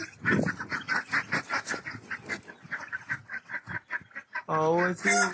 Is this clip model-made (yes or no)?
no